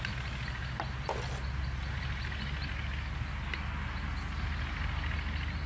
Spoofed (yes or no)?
no